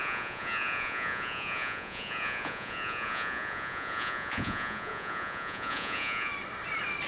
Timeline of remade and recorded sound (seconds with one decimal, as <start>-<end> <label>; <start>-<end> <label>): 0.0-6.3 remade; 6.3-7.1 recorded